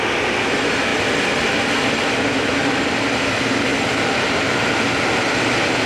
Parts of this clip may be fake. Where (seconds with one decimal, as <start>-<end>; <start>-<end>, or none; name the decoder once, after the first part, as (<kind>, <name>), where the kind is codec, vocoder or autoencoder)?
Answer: none